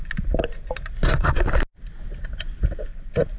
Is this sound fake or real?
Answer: real